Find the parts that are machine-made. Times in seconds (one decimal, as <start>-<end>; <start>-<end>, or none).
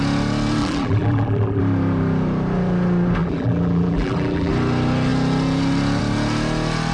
0.6-1.6; 3.2-4.5